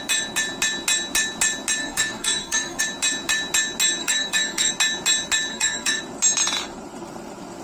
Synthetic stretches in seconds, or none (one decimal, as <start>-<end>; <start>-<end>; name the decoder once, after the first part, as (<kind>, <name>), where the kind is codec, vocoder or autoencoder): 1.8-2.8 (codec, SNAC); 4.0-4.7; 5.5-6.0